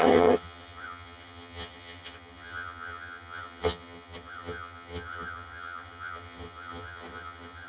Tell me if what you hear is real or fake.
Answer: fake